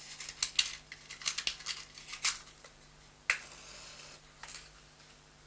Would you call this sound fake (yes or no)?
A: no